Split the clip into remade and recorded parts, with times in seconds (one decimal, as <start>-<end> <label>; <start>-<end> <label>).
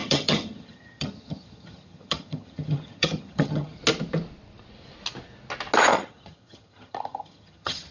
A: 0.0-3.8 remade; 3.8-5.9 recorded; 5.9-7.9 remade